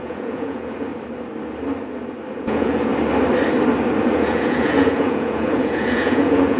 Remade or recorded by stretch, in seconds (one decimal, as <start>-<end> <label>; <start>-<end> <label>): 0.0-0.9 remade; 0.9-2.3 recorded; 2.3-2.9 remade; 2.9-4.0 recorded; 4.0-6.6 remade